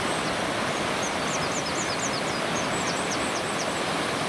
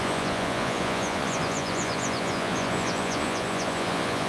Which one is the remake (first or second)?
second